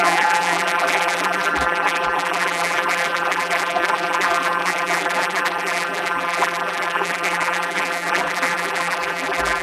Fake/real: fake